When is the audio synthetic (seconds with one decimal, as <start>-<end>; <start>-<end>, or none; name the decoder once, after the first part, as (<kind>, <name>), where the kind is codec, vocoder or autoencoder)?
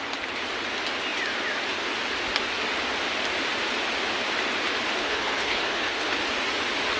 5.0-6.2 (codec, HILCodec)